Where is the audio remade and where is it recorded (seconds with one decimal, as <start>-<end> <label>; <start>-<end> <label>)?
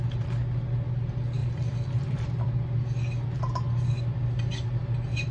0.0-1.4 recorded; 1.4-2.5 remade; 2.5-5.3 recorded